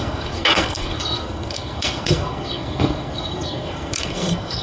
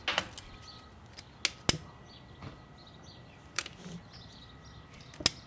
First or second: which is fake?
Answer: first